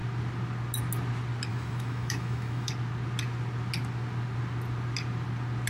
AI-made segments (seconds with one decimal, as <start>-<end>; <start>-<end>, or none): 1.5-2.7